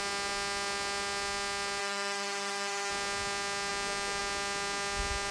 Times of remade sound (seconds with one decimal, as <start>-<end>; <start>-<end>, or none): 1.8-2.9